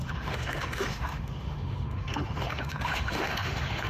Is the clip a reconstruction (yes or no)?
yes